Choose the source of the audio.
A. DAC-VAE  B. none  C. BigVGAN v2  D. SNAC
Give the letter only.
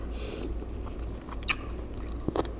B